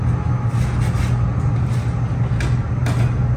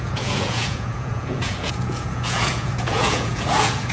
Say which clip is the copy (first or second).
second